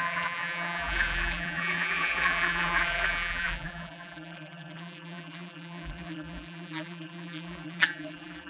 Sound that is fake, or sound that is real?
fake